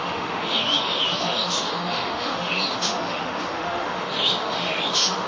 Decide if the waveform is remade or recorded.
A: remade